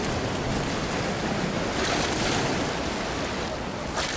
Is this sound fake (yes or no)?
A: no